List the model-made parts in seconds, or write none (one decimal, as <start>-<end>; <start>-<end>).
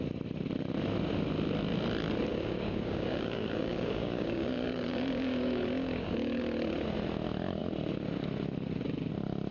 2.3-6.4